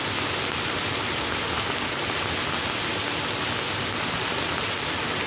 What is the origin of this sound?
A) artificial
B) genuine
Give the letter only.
B